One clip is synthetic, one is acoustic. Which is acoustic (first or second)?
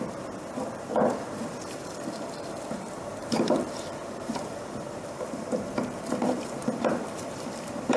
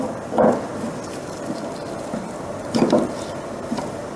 second